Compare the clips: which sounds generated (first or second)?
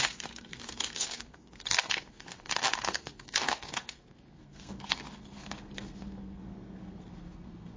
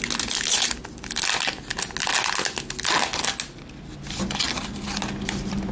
first